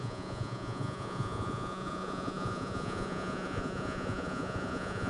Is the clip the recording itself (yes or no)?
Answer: no